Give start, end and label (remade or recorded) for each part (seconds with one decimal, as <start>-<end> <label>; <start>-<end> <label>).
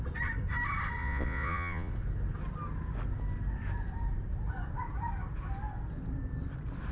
0.0-1.0 recorded; 1.0-1.9 remade; 1.9-6.9 recorded